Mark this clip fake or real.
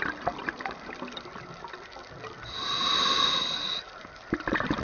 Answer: real